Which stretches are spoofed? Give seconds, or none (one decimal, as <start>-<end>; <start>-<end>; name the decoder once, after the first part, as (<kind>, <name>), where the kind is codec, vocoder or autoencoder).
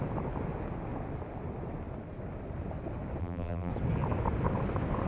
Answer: 3.2-3.7 (vocoder, BigVGAN v2)